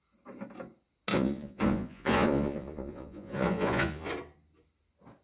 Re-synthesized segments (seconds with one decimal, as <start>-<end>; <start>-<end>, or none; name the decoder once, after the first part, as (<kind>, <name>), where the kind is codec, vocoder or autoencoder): 1.1-4.1 (vocoder, Vocos)